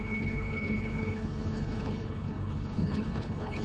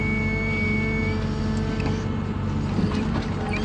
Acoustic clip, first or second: second